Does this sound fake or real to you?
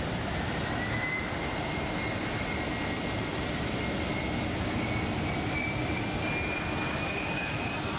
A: real